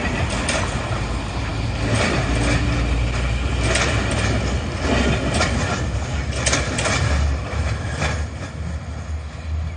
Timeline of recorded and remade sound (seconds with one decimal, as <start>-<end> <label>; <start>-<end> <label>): 0.0-9.8 recorded